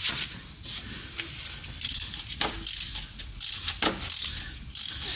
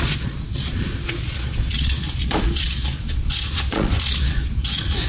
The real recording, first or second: first